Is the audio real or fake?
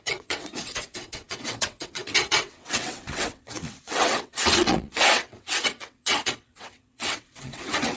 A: fake